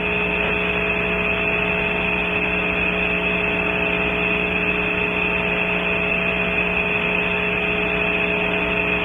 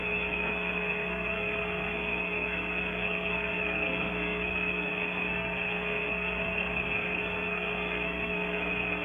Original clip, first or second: first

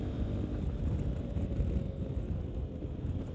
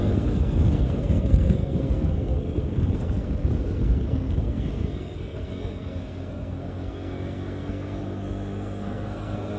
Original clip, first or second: first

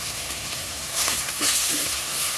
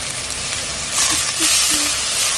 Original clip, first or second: second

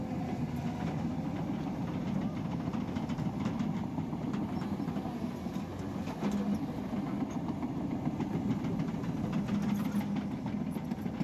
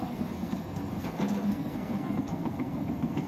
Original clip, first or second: first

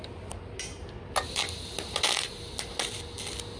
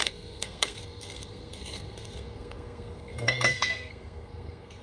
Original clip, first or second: first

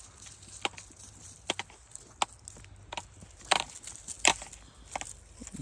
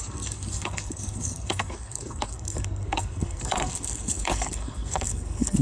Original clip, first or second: first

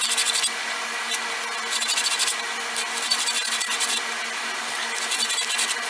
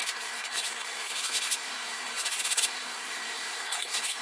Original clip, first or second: first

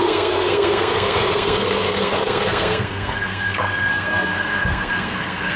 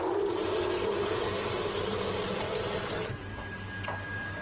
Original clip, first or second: second